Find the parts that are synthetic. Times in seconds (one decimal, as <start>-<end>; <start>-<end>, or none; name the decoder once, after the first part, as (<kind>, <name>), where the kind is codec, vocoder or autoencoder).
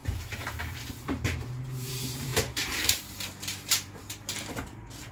0.0-5.1 (vocoder, BigVGAN v2)